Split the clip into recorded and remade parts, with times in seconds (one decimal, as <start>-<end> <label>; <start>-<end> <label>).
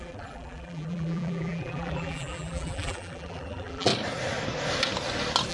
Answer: 0.0-3.9 remade; 3.9-5.5 recorded